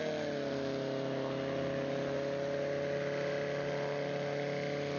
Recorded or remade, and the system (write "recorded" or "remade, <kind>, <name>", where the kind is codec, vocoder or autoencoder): recorded